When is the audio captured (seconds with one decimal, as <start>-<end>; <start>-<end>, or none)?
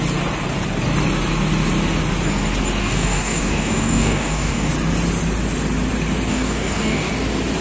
0.0-2.8; 4.7-6.3; 7.1-7.6